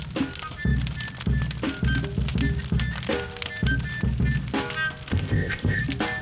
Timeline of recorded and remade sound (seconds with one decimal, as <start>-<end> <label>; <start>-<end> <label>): 0.0-5.1 recorded; 5.1-5.8 remade; 5.8-6.2 recorded